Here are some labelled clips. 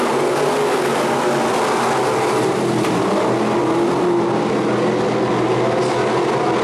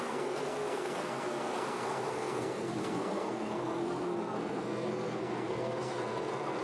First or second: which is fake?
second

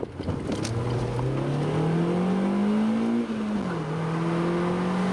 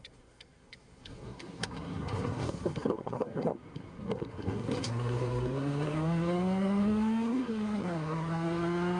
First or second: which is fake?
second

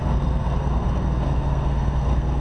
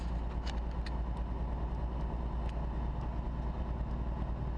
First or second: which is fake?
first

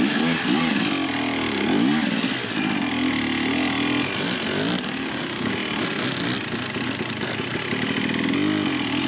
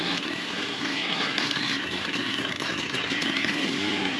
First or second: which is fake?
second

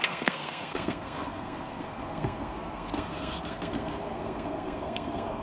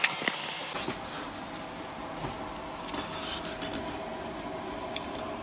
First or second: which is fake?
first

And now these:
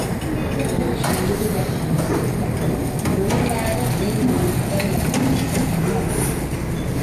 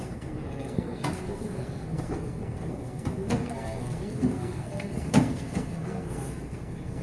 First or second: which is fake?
second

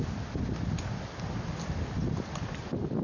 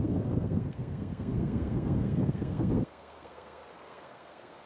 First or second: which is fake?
second